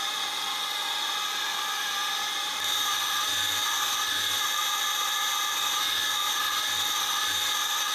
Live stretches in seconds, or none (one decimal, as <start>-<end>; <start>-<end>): 0.0-2.0; 2.9-7.9